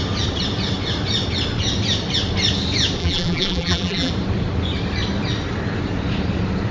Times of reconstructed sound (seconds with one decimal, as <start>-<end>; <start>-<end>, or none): 3.0-4.1